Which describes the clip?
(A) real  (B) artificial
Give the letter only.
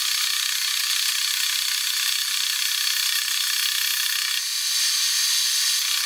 A